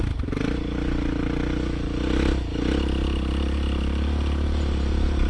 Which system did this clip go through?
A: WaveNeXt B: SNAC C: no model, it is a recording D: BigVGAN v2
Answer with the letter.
C